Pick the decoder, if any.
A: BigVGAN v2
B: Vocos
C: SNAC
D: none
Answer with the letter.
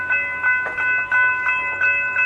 D